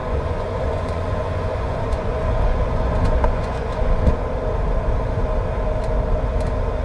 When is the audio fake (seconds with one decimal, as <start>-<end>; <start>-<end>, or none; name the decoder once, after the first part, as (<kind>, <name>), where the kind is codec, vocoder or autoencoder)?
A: 0.0-4.1 (vocoder, Vocos)